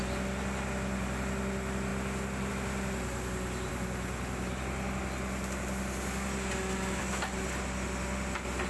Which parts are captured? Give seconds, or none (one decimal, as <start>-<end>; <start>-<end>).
0.0-8.7